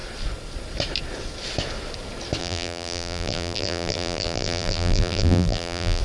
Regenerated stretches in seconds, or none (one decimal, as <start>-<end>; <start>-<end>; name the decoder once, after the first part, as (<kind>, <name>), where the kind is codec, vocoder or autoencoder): 2.4-6.0 (vocoder, BigVGAN v2)